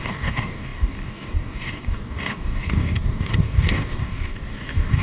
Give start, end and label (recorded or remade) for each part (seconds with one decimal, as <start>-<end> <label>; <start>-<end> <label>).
0.0-5.0 remade